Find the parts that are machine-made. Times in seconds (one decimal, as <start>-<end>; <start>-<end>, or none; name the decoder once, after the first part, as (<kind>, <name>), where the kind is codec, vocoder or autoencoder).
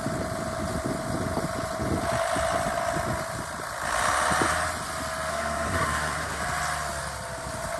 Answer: 5.3-6.4 (codec, SNAC)